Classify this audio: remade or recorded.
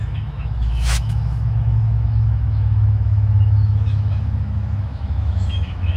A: remade